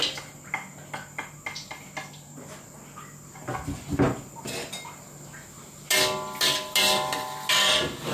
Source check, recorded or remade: recorded